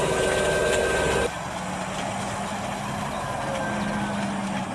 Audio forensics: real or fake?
real